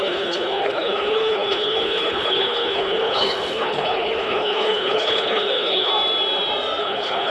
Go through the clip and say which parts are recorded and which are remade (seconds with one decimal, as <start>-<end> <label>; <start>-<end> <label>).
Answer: 0.0-5.9 remade; 5.9-6.8 recorded; 6.8-7.3 remade